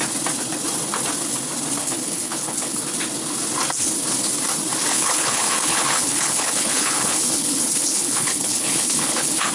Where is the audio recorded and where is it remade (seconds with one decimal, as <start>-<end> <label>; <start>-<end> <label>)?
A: 0.0-1.8 recorded; 1.8-2.8 remade; 2.8-4.9 recorded; 4.9-9.5 remade